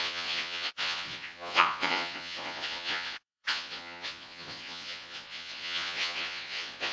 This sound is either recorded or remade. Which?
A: remade